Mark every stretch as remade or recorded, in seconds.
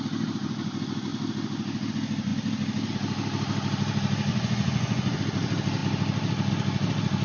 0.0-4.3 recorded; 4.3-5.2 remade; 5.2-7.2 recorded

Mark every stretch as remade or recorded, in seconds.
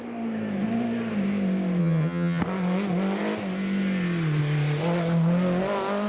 0.0-1.8 recorded; 1.8-2.4 remade; 2.4-6.1 recorded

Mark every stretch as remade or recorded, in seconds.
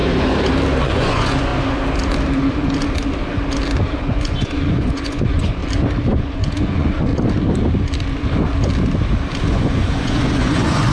0.0-0.8 recorded; 0.8-1.5 remade; 1.5-4.0 recorded; 4.0-5.6 remade; 5.6-6.1 recorded; 6.1-7.1 remade; 7.1-9.4 recorded; 9.4-10.9 remade